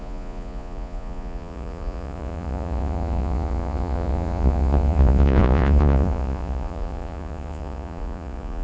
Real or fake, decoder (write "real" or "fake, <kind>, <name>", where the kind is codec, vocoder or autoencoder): fake, vocoder, Vocos